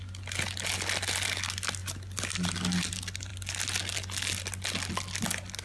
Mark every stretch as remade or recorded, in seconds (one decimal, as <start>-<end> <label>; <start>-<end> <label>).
0.0-5.6 recorded